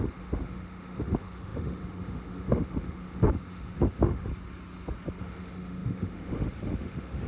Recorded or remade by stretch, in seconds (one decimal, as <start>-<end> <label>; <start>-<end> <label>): 0.0-4.3 remade; 4.3-5.2 recorded; 5.2-7.3 remade